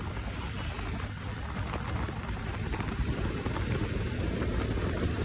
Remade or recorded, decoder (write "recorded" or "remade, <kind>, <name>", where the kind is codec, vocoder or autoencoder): remade, vocoder, BigVGAN v2